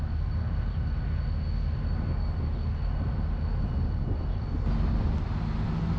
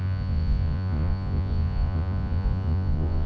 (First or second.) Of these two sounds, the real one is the first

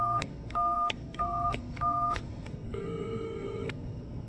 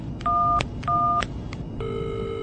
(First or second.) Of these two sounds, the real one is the second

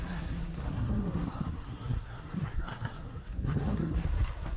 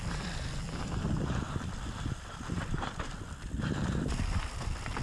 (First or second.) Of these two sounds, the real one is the second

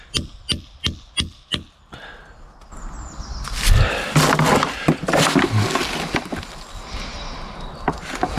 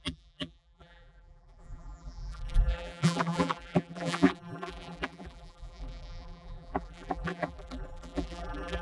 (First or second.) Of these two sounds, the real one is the first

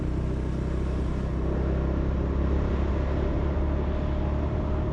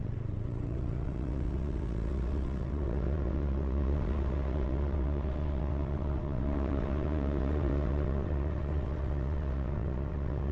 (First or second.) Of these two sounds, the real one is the first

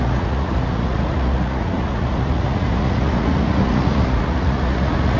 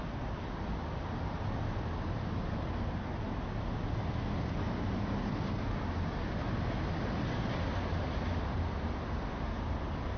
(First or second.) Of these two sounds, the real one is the second